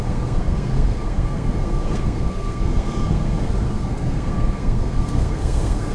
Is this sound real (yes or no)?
no